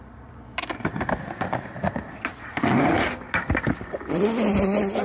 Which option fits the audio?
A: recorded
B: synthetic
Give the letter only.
A